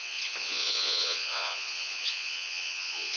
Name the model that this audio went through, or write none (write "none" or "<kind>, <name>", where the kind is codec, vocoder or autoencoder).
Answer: vocoder, Vocos